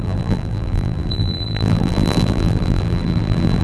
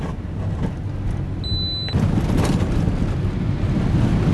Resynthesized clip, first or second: first